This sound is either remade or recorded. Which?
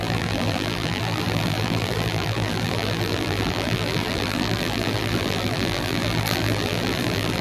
remade